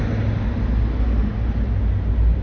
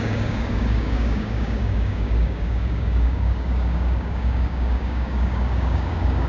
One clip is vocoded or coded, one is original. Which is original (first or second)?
first